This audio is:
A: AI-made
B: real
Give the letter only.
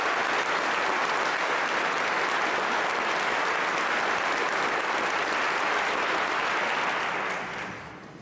B